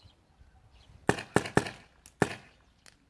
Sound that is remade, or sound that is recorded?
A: recorded